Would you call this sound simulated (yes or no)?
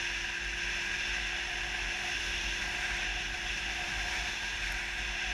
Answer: no